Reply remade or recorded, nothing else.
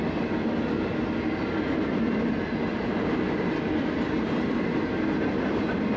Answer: recorded